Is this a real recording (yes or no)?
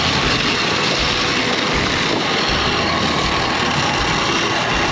yes